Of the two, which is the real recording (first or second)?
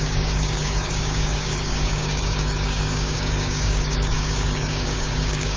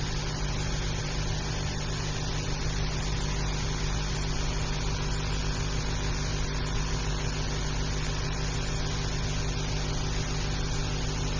second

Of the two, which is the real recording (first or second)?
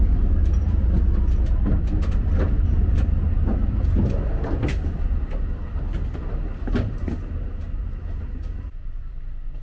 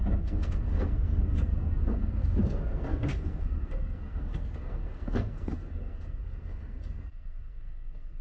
first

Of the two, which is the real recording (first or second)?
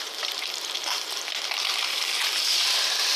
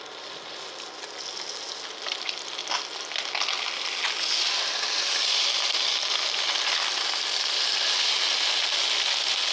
second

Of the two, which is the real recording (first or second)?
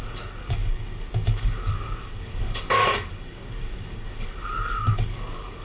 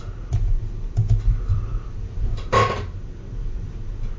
second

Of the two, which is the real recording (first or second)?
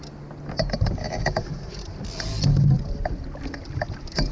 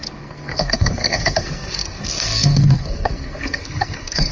first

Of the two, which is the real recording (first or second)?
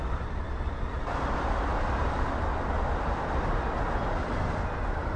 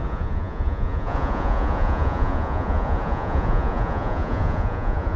first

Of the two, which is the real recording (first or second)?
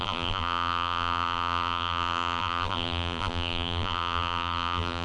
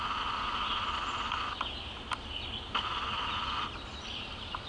second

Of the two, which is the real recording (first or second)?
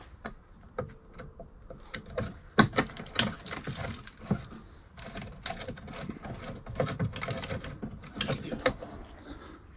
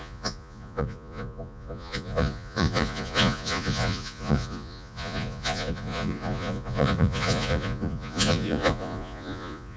first